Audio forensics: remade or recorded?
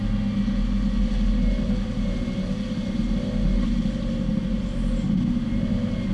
recorded